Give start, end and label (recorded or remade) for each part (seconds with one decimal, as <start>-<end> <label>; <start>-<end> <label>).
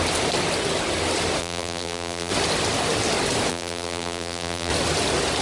0.0-1.4 recorded; 1.4-2.3 remade; 2.3-3.5 recorded; 3.5-4.7 remade; 4.7-5.4 recorded